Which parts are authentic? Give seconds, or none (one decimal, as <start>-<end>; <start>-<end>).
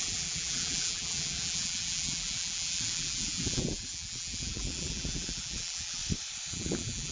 6.0-6.5